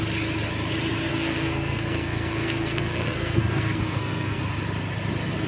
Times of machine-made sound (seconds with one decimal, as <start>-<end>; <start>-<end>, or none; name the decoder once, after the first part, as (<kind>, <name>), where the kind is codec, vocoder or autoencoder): 1.1-4.4 (codec, SNAC)